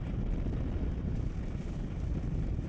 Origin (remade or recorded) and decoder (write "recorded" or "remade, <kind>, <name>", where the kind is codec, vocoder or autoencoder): recorded